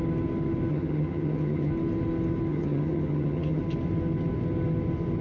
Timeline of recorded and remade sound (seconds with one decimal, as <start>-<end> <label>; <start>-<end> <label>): 0.0-0.7 recorded; 0.7-1.7 remade; 1.7-2.5 recorded; 2.5-3.6 remade; 3.6-5.2 recorded